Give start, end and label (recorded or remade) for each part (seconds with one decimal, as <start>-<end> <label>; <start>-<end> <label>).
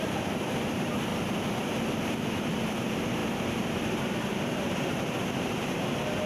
0.0-1.1 remade; 1.1-2.7 recorded; 2.7-6.3 remade